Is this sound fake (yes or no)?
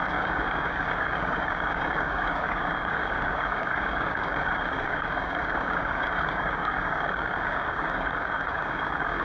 yes